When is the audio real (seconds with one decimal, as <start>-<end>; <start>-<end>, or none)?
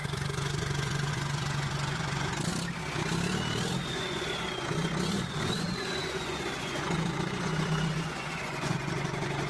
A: 2.5-3.9